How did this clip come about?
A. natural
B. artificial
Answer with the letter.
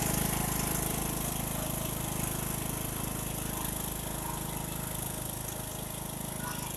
A